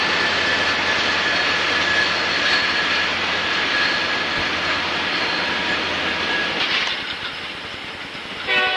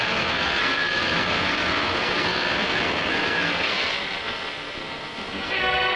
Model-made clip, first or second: second